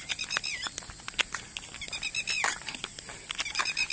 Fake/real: real